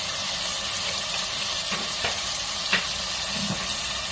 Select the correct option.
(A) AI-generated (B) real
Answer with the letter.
A